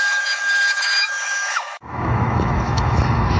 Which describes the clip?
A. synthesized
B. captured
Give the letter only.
A